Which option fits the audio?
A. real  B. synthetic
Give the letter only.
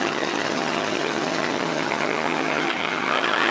B